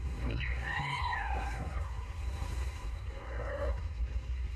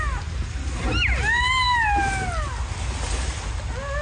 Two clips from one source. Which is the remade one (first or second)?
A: first